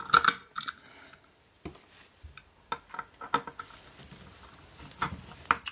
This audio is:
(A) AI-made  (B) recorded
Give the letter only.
B